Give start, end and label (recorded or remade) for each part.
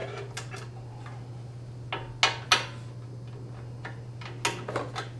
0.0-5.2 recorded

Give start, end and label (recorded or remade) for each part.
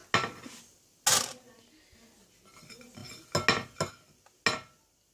0.0-5.1 recorded